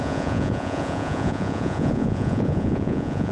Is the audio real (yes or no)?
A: no